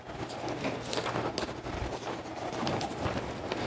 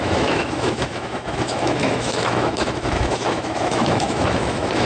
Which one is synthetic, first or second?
second